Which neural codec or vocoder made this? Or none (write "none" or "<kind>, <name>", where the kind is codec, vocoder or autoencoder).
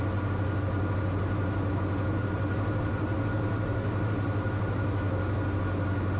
none